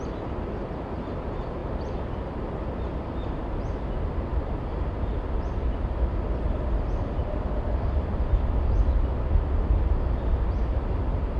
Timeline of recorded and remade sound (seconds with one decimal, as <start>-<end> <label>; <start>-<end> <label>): 0.0-11.4 recorded